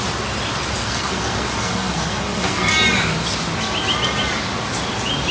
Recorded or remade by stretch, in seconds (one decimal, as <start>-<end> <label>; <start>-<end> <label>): 0.0-0.8 recorded; 0.8-2.7 remade; 2.7-5.3 recorded